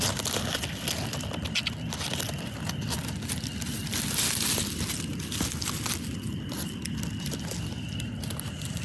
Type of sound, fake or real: real